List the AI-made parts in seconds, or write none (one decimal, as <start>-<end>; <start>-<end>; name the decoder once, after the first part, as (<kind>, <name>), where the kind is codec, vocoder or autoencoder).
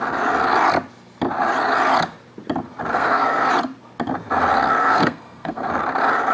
2.9-3.5 (codec, SNAC); 4.8-5.7